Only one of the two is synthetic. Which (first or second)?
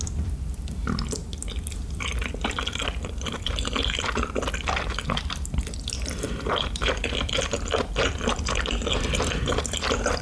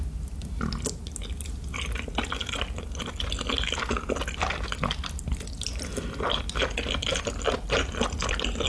first